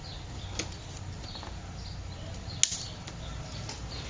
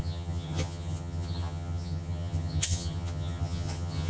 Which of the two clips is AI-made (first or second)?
second